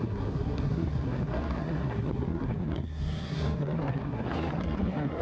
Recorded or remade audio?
remade